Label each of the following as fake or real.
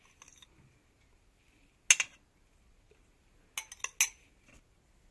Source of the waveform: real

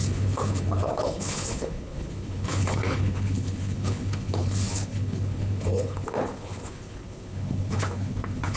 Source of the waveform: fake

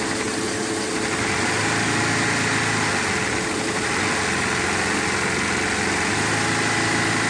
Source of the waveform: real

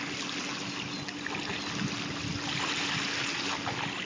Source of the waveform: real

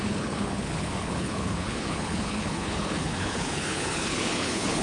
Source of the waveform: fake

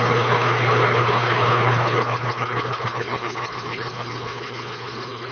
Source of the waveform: fake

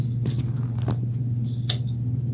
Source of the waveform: real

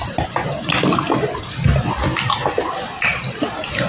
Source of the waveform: real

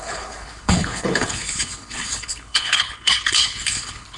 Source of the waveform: fake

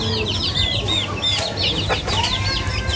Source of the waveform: real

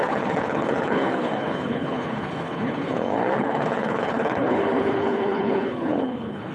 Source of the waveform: fake